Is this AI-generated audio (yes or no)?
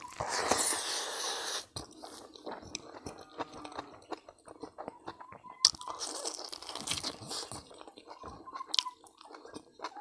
no